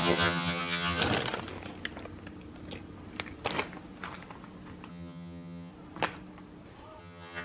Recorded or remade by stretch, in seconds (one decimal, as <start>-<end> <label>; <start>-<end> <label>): 0.0-1.0 remade; 1.0-4.9 recorded; 4.9-5.7 remade; 5.7-7.0 recorded; 7.0-7.4 remade